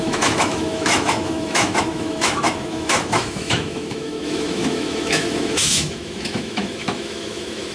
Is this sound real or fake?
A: fake